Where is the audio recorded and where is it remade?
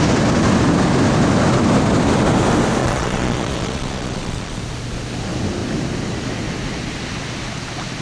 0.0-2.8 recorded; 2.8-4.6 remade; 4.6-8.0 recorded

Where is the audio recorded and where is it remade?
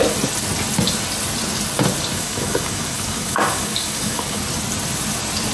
0.0-2.1 recorded; 2.1-4.4 remade; 4.4-5.5 recorded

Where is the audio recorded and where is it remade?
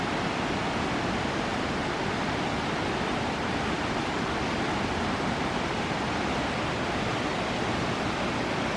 0.0-8.8 recorded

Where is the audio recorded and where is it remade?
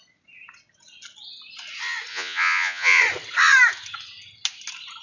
0.0-2.1 recorded; 2.1-3.0 remade; 3.0-5.0 recorded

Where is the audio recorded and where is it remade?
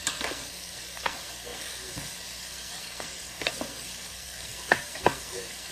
0.0-5.7 remade